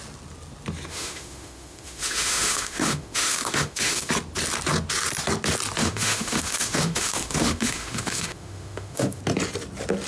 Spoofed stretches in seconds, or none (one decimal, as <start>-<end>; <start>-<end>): 0.9-4.1; 5.8-9.2